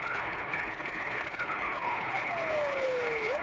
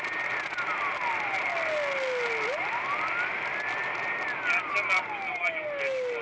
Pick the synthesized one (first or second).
first